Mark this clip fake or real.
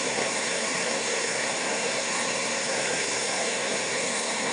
fake